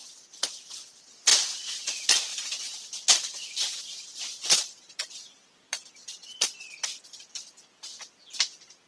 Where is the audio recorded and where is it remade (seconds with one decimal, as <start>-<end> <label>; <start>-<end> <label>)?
0.0-0.6 remade; 0.6-1.3 recorded; 1.3-1.8 remade; 1.8-2.3 recorded; 2.3-7.0 remade; 7.0-8.9 recorded